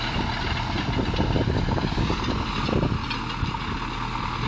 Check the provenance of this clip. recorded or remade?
recorded